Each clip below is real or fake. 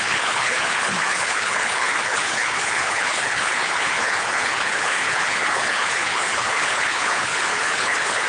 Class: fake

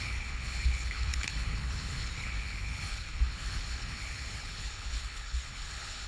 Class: fake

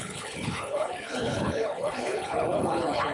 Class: fake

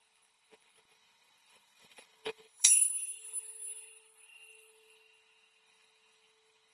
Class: fake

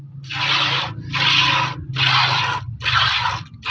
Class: real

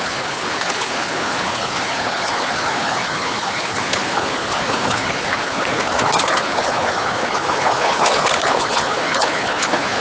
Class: fake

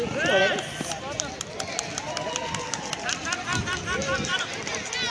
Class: real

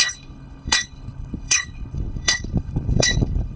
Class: fake